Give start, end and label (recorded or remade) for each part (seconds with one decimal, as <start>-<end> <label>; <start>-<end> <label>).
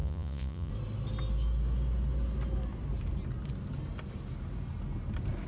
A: 0.0-0.7 remade; 0.7-5.5 recorded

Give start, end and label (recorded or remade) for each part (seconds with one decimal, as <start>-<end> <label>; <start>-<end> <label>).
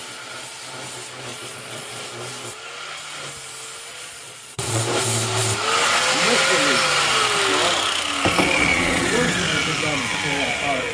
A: 0.0-1.3 recorded; 1.3-2.0 remade; 2.0-3.9 recorded; 3.9-4.8 remade; 4.8-8.7 recorded; 8.7-9.4 remade; 9.4-10.9 recorded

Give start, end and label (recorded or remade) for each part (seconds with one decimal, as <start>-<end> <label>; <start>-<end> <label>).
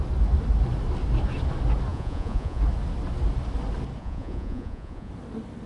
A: 0.0-1.9 recorded; 1.9-2.6 remade; 2.6-4.0 recorded; 4.0-5.1 remade; 5.1-5.7 recorded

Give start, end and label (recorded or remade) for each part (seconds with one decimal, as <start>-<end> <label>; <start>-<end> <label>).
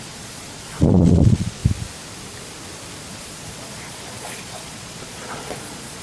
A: 0.0-1.6 remade; 1.6-3.1 recorded; 3.1-6.0 remade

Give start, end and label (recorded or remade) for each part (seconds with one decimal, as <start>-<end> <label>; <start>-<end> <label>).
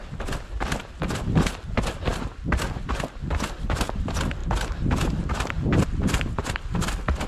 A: 0.0-7.3 recorded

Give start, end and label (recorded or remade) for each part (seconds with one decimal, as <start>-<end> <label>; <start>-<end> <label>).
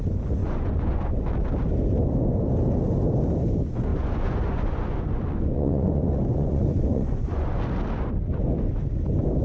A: 0.0-0.4 recorded; 0.4-1.3 remade; 1.3-3.9 recorded; 3.9-7.6 remade; 7.6-9.4 recorded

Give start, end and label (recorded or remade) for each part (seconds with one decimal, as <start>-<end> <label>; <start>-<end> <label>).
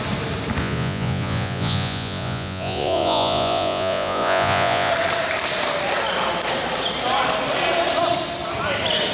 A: 0.0-0.6 recorded; 0.6-4.9 remade; 4.9-9.1 recorded